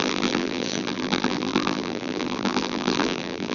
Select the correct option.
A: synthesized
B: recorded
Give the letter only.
A